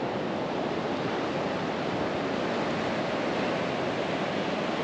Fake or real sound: real